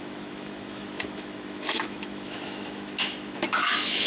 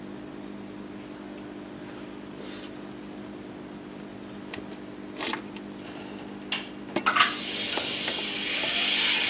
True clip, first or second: second